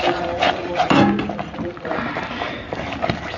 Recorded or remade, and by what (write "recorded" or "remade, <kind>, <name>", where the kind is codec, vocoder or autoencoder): recorded